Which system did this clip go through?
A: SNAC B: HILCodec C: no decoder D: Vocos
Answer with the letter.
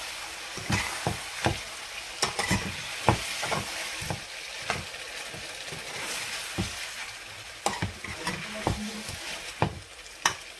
C